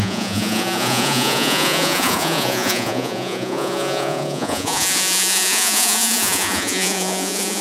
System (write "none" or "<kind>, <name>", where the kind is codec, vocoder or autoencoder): vocoder, Vocos